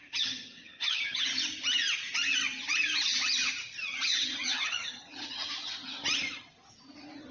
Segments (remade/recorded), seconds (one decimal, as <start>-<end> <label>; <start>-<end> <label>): 0.0-0.6 recorded; 0.6-1.3 remade; 1.3-4.1 recorded; 4.1-5.7 remade; 5.7-7.3 recorded